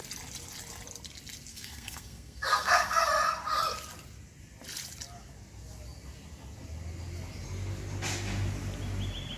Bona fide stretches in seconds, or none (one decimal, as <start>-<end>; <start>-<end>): 0.0-1.5; 3.1-9.4